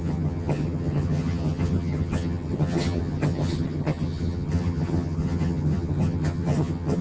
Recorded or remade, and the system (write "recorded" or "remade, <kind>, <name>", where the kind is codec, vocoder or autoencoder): remade, vocoder, HiFi-GAN